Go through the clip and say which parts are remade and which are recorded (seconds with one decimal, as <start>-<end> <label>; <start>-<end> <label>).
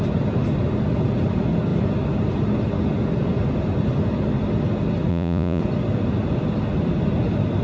0.0-5.1 recorded; 5.1-5.6 remade; 5.6-7.6 recorded